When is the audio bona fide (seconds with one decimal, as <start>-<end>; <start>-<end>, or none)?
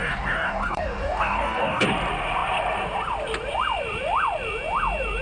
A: 1.8-5.2